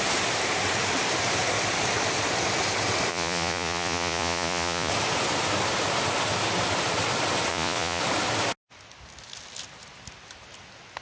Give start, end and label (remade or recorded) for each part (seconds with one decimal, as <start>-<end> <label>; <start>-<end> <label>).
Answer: 0.0-3.1 recorded; 3.1-4.9 remade; 4.9-7.5 recorded; 7.5-8.0 remade; 8.0-11.0 recorded